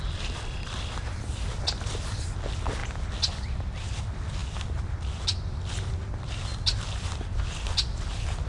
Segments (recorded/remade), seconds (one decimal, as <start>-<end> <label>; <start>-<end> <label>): 0.0-8.5 recorded